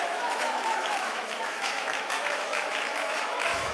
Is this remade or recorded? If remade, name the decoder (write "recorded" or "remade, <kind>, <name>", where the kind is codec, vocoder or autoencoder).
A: remade, autoencoder, DAC-VAE